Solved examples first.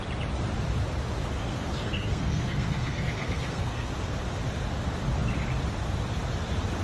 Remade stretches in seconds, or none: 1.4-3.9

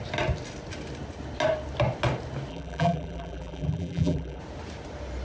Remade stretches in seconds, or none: 2.5-4.4

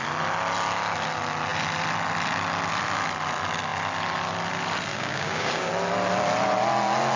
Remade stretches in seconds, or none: 4.9-5.7

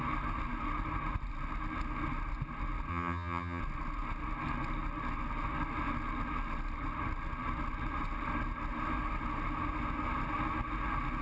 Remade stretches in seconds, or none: 2.9-3.6

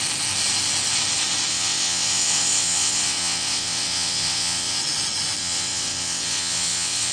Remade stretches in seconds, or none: 1.5-4.8; 5.4-7.1

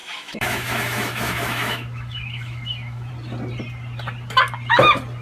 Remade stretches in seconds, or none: 0.0-3.1

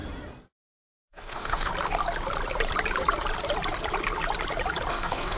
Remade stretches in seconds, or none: 1.1-1.7; 4.9-5.4